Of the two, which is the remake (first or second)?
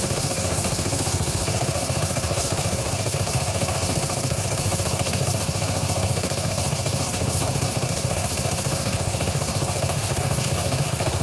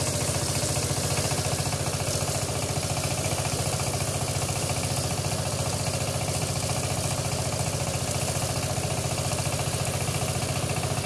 first